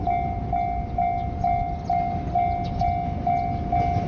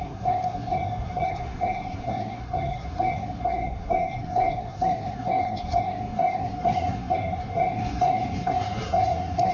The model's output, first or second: second